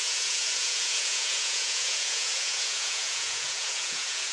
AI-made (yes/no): yes